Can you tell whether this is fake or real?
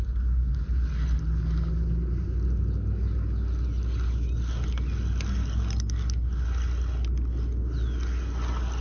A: real